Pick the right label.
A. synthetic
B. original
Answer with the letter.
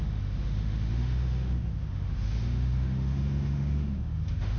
A